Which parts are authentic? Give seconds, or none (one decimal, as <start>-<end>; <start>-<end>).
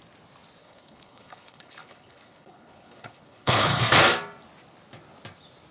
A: 0.0-0.6; 3.8-5.7